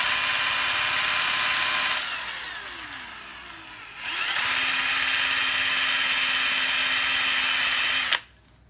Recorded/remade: recorded